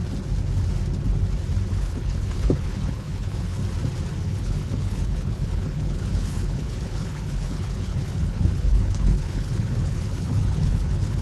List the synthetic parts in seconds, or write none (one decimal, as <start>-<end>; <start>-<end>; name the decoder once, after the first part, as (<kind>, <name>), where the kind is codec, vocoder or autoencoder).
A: 1.7-3.6 (codec, HILCodec); 4.2-11.2